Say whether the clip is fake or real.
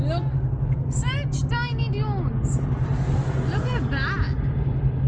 real